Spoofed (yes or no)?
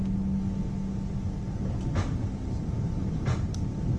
no